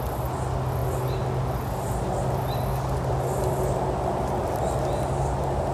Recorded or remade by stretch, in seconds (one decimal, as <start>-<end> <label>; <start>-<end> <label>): 0.0-5.7 recorded